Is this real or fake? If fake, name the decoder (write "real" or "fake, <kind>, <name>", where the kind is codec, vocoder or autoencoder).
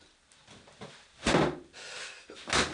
real